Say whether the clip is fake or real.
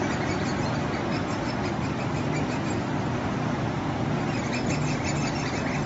real